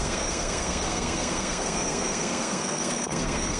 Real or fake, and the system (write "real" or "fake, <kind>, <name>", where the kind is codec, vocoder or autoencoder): fake, codec, SNAC